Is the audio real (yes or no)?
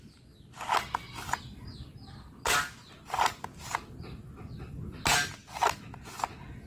yes